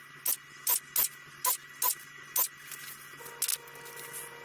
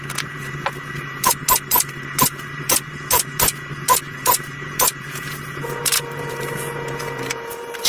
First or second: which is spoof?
second